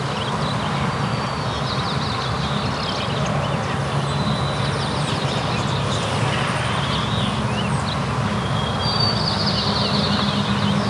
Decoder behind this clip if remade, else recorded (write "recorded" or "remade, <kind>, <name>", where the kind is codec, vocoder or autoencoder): recorded